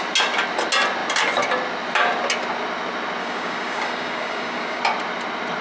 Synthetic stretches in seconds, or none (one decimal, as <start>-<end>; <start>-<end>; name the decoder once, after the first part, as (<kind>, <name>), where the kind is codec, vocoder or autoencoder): 3.2-4.8 (codec, DAC)